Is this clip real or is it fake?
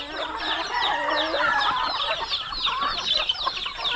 real